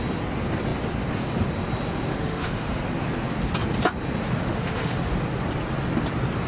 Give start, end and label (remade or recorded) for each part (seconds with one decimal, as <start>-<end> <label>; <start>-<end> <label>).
0.0-2.1 recorded; 2.1-2.9 remade; 2.9-4.4 recorded; 4.4-5.1 remade; 5.1-6.5 recorded